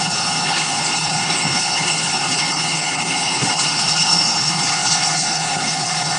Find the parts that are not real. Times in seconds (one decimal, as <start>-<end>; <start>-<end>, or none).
0.0-6.2